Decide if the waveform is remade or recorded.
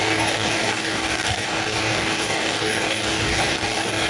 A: remade